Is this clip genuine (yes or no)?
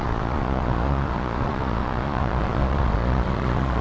no